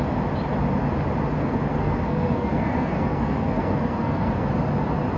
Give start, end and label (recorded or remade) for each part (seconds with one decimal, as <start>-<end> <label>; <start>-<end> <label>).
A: 0.0-1.4 recorded; 1.4-4.5 remade; 4.5-5.2 recorded